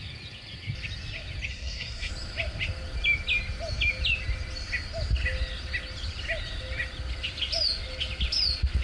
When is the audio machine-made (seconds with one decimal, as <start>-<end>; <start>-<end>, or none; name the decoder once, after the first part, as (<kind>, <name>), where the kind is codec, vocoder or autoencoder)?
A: 1.5-2.1 (codec, SNAC)